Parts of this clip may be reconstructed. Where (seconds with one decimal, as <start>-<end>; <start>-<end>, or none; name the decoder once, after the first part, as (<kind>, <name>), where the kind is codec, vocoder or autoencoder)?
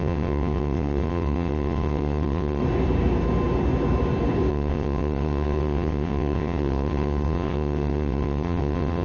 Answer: 0.0-2.6 (vocoder, WaveNeXt); 4.5-9.0